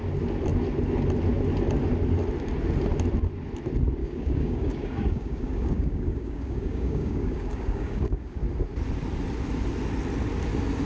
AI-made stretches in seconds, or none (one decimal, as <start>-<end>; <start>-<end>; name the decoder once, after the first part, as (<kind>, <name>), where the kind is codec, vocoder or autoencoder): 4.0-8.4 (codec, DAC)